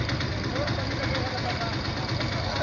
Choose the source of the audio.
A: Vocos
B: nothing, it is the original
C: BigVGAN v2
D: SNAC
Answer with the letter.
B